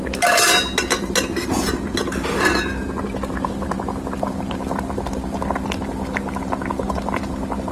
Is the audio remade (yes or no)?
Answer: no